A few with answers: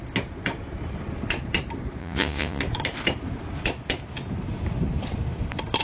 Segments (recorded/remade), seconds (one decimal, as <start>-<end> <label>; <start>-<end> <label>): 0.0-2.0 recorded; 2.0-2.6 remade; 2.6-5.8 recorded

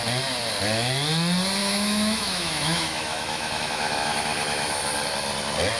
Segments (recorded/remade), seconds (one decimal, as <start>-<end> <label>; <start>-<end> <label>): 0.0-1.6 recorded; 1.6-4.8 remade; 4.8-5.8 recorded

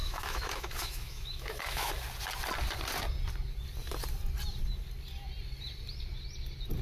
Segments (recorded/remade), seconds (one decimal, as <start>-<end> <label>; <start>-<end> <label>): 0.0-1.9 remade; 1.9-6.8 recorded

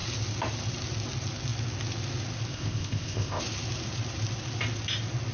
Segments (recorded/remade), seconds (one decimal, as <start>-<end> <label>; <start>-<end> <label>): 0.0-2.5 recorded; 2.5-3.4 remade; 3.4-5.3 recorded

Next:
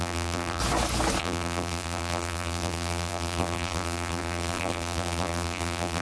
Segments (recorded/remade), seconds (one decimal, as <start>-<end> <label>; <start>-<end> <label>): 0.0-0.6 remade; 0.6-1.2 recorded; 1.2-6.0 remade

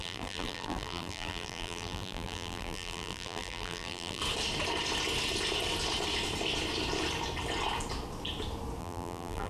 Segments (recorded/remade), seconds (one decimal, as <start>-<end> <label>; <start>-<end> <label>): 0.0-4.2 remade; 4.2-8.8 recorded; 8.8-9.5 remade

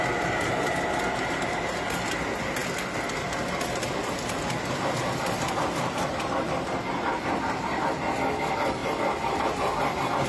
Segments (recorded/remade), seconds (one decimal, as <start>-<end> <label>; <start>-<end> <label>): 0.0-10.3 recorded